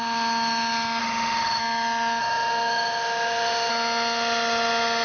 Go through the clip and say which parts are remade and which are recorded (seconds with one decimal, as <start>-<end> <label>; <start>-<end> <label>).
0.0-1.0 recorded; 1.0-1.6 remade; 1.6-2.2 recorded; 2.2-3.7 remade; 3.7-5.0 recorded

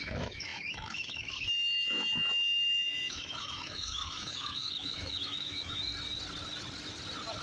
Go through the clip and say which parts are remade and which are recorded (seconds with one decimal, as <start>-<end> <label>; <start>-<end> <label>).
0.0-5.9 remade; 5.9-7.4 recorded

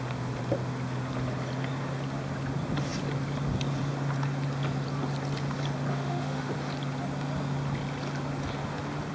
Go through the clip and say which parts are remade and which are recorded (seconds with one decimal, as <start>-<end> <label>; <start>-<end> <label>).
0.0-5.9 recorded; 5.9-6.5 remade; 6.5-9.1 recorded

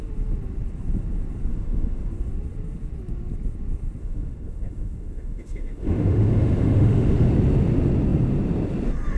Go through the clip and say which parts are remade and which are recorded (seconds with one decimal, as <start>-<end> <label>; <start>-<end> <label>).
0.0-1.5 recorded; 1.5-2.1 remade; 2.1-4.0 recorded; 4.0-7.3 remade; 7.3-9.2 recorded

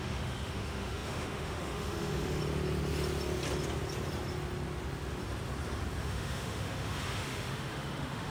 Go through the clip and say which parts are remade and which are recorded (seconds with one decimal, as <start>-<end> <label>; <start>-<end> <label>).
0.0-2.4 remade; 2.4-6.0 recorded; 6.0-8.3 remade

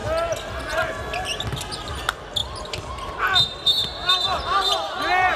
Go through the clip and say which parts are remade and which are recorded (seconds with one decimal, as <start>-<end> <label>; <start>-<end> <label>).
0.0-5.4 recorded

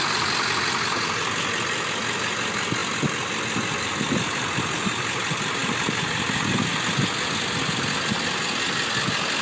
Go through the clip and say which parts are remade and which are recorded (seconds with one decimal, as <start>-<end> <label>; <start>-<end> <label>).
0.0-9.4 recorded

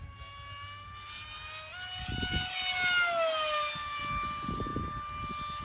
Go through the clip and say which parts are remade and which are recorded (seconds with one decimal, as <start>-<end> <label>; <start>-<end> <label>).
0.0-5.6 recorded